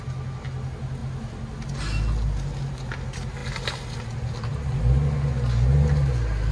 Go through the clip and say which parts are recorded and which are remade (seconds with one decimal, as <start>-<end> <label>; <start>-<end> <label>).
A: 0.0-6.5 recorded